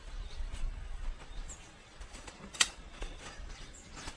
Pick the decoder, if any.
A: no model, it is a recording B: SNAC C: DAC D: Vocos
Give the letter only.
D